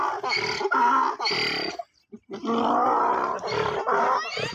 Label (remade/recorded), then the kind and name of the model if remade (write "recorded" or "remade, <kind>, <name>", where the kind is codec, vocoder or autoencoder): recorded